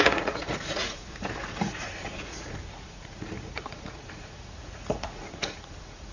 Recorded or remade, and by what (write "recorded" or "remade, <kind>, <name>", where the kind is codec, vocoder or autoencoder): remade, vocoder, Vocos